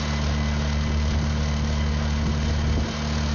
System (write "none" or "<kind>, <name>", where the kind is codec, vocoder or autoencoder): none